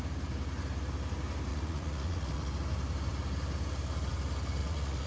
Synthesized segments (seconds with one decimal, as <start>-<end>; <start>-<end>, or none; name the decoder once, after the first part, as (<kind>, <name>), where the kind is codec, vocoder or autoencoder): 1.5-2.5 (vocoder, Vocos); 4.6-5.1